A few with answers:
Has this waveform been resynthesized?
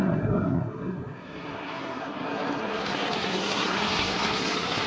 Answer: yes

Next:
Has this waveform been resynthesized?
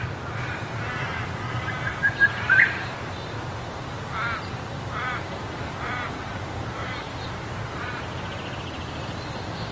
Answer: no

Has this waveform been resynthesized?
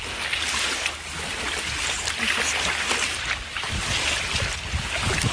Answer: no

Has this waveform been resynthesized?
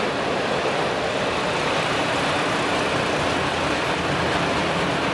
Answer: no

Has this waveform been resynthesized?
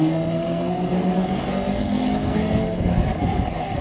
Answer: yes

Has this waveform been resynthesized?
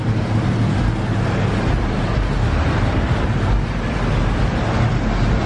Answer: no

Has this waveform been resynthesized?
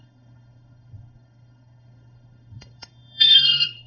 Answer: yes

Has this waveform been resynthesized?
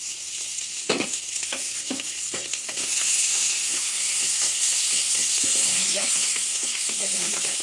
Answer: yes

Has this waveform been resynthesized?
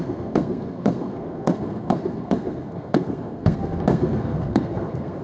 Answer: yes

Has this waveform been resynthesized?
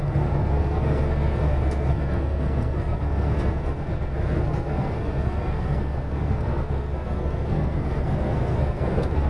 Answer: yes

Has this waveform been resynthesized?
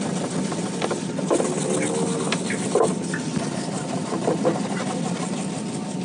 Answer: no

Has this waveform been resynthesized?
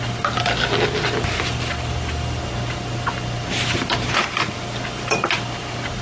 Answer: no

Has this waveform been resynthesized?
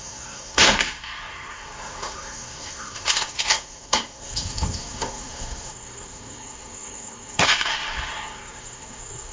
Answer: yes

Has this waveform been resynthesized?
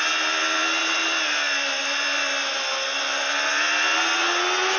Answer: no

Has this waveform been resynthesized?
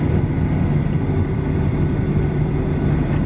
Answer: no